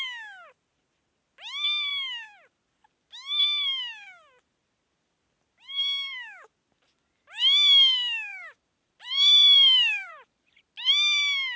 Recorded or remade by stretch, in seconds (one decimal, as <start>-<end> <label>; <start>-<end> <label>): 0.0-8.3 recorded; 8.3-10.6 remade; 10.6-11.6 recorded